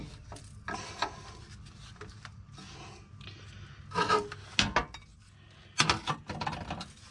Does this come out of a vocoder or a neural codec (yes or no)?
no